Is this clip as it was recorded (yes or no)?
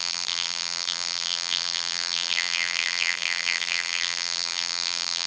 no